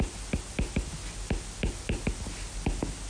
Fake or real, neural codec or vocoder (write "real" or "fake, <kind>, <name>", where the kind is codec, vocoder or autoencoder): real